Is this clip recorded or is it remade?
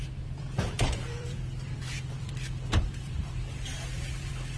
remade